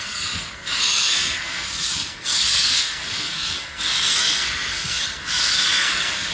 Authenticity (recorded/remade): remade